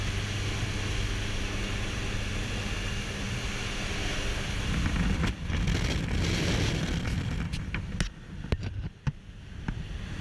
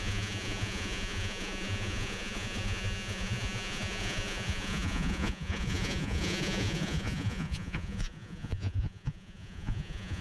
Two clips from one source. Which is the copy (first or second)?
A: second